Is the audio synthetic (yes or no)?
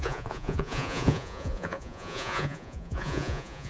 yes